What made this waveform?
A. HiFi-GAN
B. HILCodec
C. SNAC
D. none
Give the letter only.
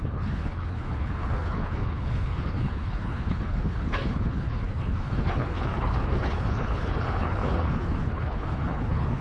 B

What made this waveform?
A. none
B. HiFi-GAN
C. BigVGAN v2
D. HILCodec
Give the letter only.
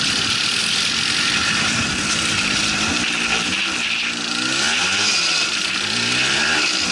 A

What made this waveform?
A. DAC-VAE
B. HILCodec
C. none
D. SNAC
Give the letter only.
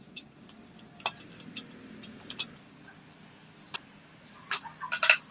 C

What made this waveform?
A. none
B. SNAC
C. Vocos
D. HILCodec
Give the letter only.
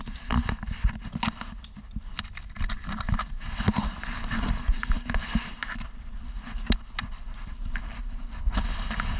A